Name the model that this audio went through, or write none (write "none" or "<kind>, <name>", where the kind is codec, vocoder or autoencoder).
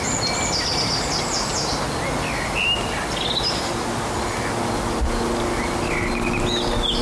none